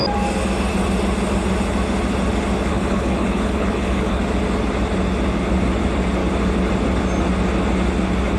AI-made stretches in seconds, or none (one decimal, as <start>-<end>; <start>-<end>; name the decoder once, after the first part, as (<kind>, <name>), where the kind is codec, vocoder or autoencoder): 2.7-4.2 (codec, HILCodec)